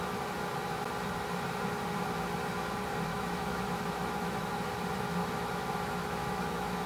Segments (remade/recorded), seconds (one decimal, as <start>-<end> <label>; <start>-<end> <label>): 0.0-3.1 recorded; 3.1-4.5 remade; 4.5-5.2 recorded; 5.2-6.9 remade